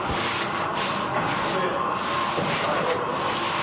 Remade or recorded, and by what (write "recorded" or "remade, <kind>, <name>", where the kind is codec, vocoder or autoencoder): recorded